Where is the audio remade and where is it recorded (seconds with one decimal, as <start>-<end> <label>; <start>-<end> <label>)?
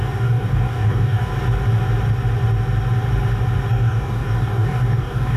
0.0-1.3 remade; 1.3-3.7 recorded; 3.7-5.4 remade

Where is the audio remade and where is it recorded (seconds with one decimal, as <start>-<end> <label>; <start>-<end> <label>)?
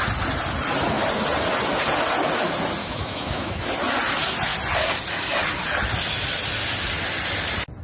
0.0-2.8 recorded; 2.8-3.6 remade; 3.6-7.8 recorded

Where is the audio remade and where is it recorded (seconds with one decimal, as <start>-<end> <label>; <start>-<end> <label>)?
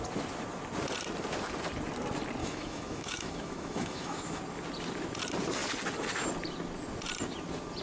0.0-2.4 recorded; 2.4-4.4 remade; 4.4-7.8 recorded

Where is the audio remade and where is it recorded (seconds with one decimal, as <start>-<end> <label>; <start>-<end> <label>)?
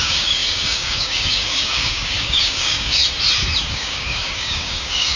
0.0-3.0 remade; 3.0-3.7 recorded; 3.7-5.2 remade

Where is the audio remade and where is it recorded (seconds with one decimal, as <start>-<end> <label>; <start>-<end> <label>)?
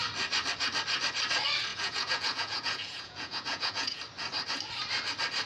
0.0-1.7 recorded; 1.7-4.0 remade; 4.0-5.5 recorded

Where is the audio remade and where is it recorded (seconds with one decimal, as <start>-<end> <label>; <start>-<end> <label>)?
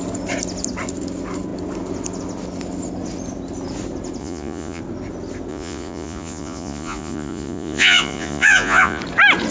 0.0-4.2 recorded; 4.2-4.8 remade; 4.8-5.5 recorded; 5.5-9.0 remade; 9.0-9.5 recorded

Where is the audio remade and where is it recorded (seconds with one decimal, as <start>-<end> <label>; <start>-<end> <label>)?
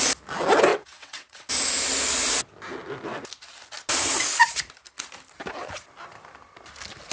0.0-0.7 recorded; 0.7-1.5 remade; 1.5-7.1 recorded